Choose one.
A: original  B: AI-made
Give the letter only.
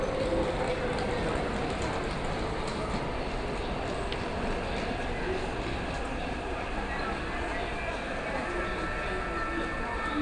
A